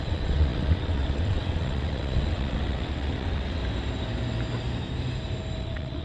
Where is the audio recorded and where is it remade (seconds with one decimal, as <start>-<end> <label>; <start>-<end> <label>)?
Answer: 0.0-3.6 remade; 3.6-5.6 recorded; 5.6-6.0 remade

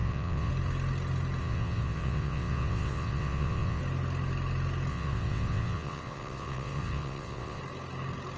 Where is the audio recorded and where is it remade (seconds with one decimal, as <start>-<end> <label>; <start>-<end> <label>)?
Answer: 0.0-0.5 remade; 0.5-1.4 recorded; 1.4-3.8 remade; 3.8-4.9 recorded; 4.9-7.6 remade; 7.6-8.4 recorded